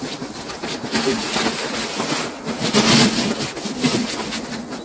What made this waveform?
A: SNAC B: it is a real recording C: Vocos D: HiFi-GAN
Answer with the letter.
B